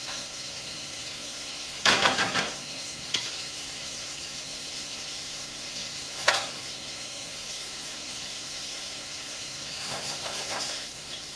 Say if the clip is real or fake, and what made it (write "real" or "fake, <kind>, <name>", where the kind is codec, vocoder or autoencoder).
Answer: fake, codec, SNAC